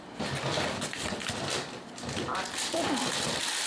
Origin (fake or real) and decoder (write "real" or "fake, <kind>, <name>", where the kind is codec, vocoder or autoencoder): real